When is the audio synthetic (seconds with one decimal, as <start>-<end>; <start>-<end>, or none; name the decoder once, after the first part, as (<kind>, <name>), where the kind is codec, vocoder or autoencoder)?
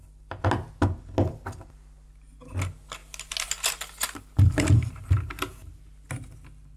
none